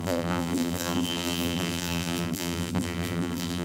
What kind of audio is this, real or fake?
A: fake